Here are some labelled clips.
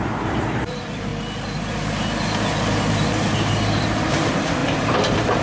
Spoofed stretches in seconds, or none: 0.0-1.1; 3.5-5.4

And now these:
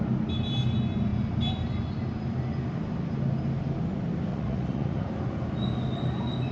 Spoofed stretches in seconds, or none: 4.3-5.1

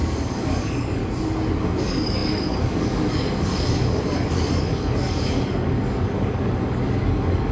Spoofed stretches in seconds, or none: 0.0-1.0; 1.6-7.5